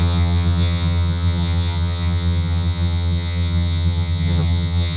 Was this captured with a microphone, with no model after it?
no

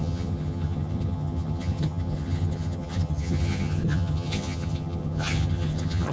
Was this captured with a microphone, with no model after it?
no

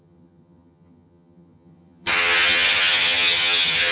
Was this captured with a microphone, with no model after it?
no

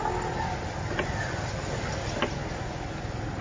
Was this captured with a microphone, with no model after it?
yes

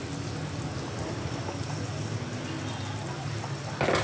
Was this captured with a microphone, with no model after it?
yes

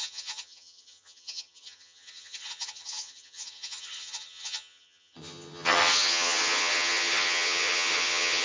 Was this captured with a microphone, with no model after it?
no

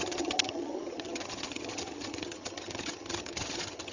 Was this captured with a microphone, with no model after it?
no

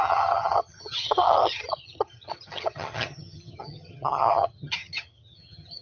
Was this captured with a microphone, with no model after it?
no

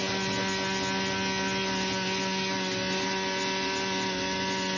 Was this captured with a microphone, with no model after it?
yes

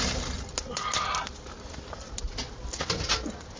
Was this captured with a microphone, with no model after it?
yes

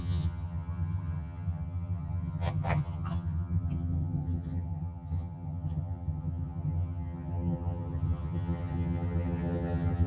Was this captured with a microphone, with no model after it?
no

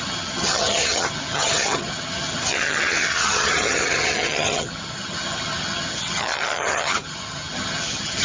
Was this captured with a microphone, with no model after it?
no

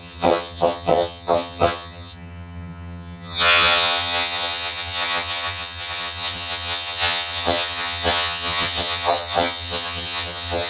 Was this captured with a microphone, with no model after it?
no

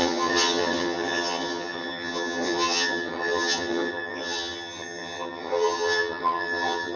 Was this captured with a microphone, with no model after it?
no